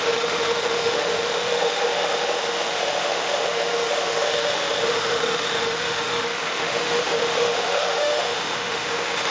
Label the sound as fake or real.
fake